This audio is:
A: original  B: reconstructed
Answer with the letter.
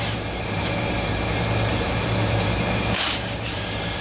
B